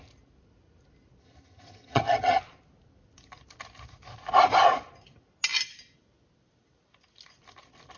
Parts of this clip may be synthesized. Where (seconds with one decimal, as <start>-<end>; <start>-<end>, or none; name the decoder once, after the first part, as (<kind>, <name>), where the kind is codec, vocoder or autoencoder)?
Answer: 1.2-2.4 (vocoder, HiFi-GAN)